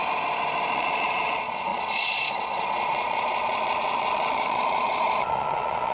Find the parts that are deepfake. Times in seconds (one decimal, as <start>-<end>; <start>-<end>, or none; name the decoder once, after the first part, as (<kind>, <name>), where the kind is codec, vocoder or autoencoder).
0.7-5.9 (vocoder, Vocos)